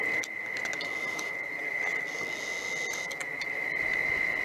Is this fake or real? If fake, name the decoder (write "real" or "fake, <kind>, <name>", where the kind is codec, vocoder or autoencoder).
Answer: real